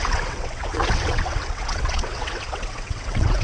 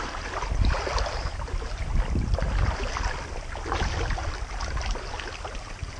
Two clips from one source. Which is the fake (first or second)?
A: first